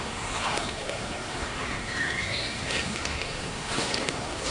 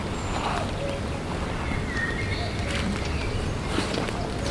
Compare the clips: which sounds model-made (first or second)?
first